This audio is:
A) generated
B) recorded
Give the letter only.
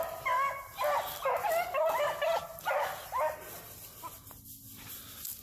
B